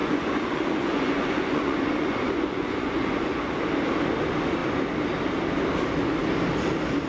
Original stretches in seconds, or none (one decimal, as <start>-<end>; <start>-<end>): 3.4-7.1